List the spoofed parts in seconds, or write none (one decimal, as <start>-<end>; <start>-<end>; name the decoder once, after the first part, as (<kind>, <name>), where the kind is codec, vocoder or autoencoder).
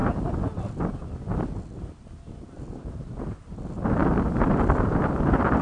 none